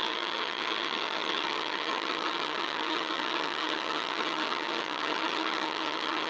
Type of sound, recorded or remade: remade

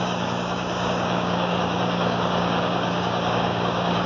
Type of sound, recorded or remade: remade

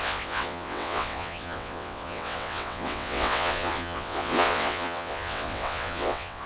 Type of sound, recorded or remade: remade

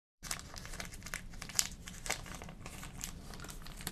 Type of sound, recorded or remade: remade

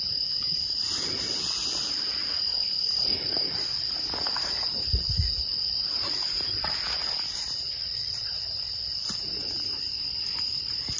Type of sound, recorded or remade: recorded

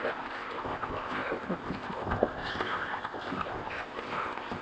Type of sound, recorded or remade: remade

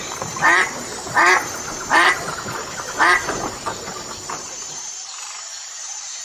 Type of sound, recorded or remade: remade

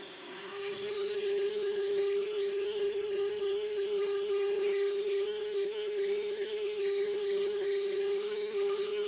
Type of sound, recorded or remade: remade